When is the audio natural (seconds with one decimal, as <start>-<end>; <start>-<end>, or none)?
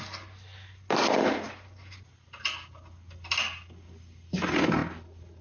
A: 0.0-5.4